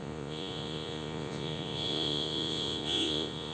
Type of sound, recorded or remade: remade